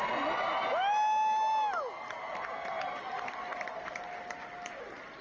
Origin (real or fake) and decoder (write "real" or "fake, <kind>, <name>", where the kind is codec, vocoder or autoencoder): real